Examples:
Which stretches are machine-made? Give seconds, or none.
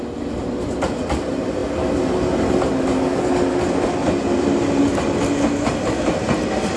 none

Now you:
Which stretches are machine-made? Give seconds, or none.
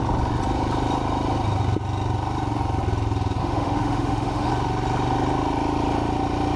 3.4-4.5 (autoencoder, DAC-VAE)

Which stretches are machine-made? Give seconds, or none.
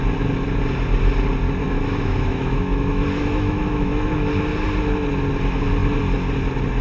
1.6-4.3 (autoencoder, DAC-VAE)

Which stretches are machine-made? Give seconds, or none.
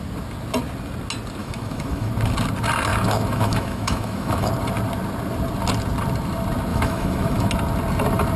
1.4-2.1 (autoencoder, DAC-VAE); 2.9-4.5; 6.7-7.5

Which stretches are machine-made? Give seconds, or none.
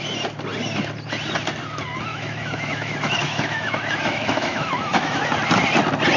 2.1-5.3 (autoencoder, DAC-VAE)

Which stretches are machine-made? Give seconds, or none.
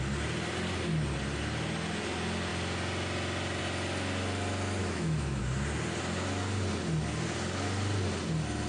4.8-5.4 (autoencoder, DAC-VAE)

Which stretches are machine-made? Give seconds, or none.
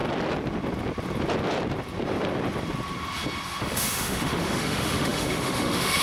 3.6-6.0 (autoencoder, DAC-VAE)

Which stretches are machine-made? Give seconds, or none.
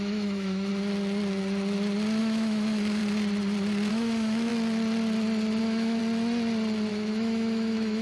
0.0-0.7 (autoencoder, DAC-VAE); 2.2-3.0; 3.9-4.5; 5.6-6.0; 6.9-8.0